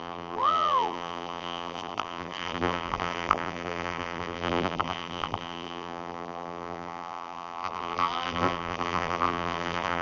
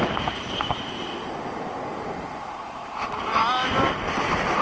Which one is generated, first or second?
first